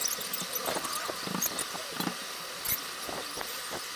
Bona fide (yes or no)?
yes